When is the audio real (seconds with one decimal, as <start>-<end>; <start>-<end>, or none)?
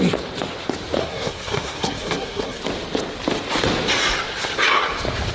0.0-1.0; 2.6-5.3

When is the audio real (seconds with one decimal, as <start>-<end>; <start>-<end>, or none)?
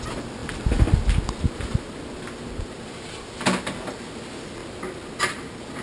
0.0-5.8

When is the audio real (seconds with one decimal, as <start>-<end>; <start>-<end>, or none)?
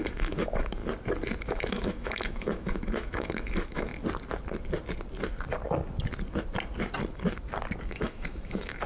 0.8-1.4; 3.9-7.8